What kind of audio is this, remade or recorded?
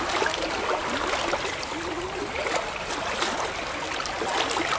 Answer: recorded